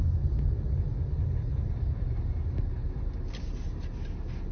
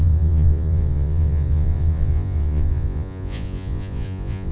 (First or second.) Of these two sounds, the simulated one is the second